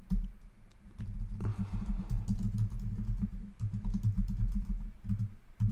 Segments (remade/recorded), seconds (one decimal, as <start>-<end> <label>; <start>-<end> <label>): 0.0-5.7 recorded